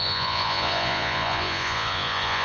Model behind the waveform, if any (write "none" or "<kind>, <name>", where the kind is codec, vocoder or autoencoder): vocoder, Vocos